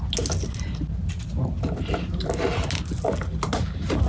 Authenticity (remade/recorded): recorded